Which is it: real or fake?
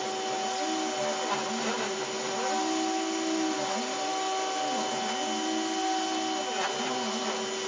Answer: real